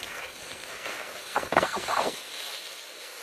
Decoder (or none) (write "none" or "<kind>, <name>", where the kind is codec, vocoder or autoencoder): codec, SNAC